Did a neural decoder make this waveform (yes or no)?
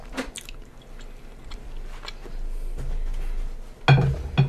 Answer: no